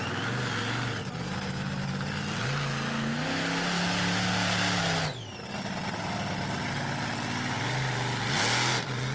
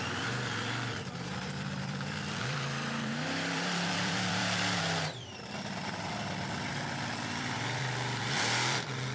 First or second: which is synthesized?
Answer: second